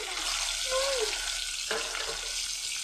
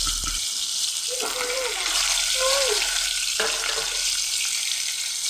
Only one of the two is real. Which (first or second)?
first